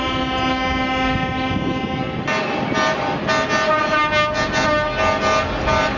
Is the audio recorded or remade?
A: recorded